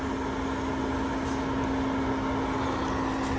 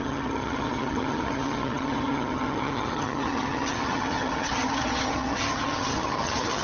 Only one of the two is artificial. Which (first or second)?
second